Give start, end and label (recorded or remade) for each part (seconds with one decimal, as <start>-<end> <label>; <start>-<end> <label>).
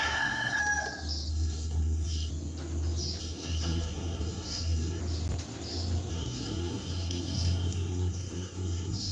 0.0-0.6 remade; 0.6-1.3 recorded; 1.3-2.3 remade; 2.3-3.2 recorded; 3.2-5.0 remade; 5.0-6.1 recorded; 6.1-9.1 remade